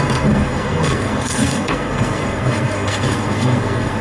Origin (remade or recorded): remade